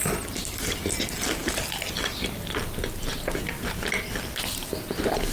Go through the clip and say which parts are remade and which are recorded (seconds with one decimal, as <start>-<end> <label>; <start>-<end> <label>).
0.0-5.3 recorded